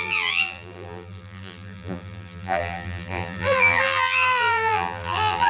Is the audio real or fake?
fake